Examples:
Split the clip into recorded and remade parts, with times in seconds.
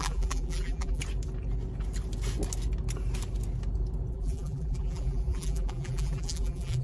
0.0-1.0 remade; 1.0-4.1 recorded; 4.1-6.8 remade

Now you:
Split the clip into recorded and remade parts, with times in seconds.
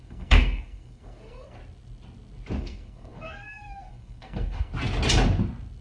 0.0-1.6 remade; 1.6-2.6 recorded; 2.6-4.7 remade; 4.7-5.8 recorded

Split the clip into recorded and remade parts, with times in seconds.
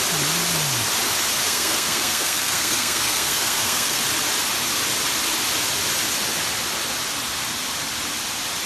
0.0-1.4 recorded; 1.4-4.0 remade; 4.0-8.7 recorded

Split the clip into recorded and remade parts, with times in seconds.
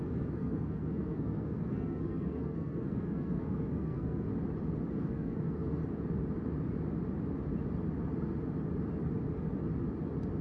0.0-4.3 remade; 4.3-4.9 recorded; 4.9-5.8 remade; 5.8-10.4 recorded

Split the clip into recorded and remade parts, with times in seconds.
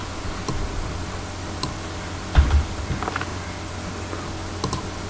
0.0-1.0 remade; 1.0-3.3 recorded; 3.3-3.9 remade; 3.9-5.1 recorded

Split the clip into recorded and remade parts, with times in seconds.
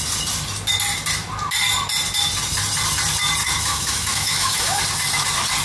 0.0-3.4 recorded; 3.4-4.8 remade; 4.8-5.6 recorded